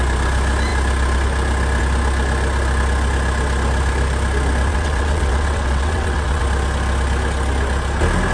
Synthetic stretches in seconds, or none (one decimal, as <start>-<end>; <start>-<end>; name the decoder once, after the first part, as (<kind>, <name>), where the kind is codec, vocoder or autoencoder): 4.7-6.4 (vocoder, WaveNeXt)